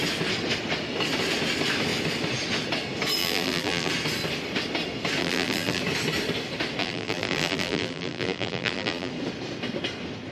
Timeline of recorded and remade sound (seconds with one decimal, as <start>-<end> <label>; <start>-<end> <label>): 0.0-3.2 recorded; 3.2-3.9 remade; 3.9-5.2 recorded; 5.2-5.8 remade; 5.8-6.8 recorded; 6.8-9.1 remade; 9.1-10.3 recorded